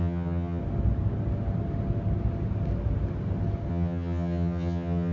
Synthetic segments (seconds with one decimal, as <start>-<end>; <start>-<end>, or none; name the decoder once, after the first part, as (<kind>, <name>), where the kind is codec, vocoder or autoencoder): 0.0-0.6 (vocoder, HiFi-GAN); 3.7-5.1